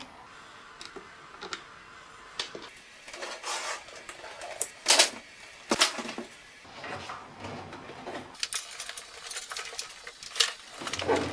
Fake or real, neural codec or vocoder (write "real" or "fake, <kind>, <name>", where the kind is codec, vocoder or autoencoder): real